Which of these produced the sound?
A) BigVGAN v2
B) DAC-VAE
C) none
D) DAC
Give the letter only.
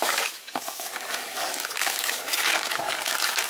D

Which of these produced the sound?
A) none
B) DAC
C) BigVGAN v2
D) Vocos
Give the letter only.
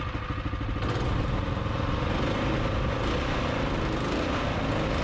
A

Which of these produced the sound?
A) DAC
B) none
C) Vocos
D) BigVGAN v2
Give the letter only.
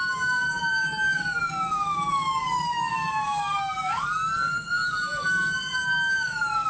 A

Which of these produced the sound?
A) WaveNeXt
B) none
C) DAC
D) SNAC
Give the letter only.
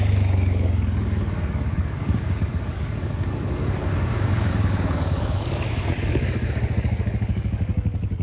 C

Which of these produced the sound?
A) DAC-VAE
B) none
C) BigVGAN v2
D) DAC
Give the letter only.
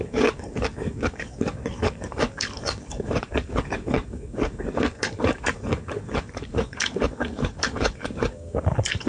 D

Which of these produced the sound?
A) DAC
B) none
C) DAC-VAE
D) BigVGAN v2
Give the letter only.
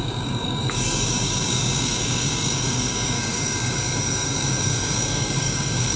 A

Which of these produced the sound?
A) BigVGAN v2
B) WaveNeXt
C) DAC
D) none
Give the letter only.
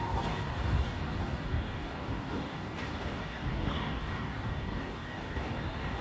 C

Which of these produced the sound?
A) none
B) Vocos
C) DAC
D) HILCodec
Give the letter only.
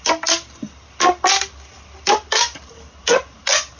A